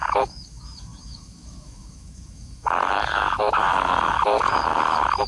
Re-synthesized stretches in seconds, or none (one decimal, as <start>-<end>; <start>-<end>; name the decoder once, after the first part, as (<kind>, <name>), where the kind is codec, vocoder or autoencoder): 0.0-5.3 (autoencoder, DAC-VAE)